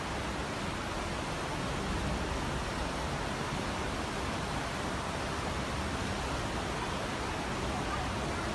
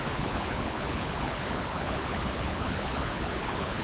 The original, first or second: first